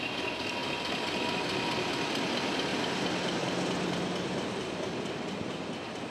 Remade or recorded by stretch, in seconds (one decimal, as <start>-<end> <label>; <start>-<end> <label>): 0.0-2.7 recorded; 2.7-3.4 remade; 3.4-6.1 recorded